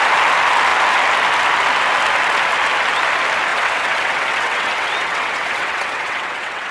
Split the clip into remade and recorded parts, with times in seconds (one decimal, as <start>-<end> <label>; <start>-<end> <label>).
0.0-3.5 recorded; 3.5-6.7 remade